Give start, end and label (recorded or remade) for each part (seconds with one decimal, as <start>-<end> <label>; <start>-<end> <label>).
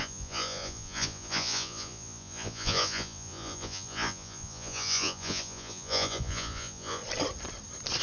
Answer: 0.0-7.0 remade; 7.0-8.0 recorded